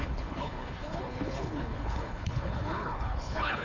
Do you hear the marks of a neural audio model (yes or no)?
yes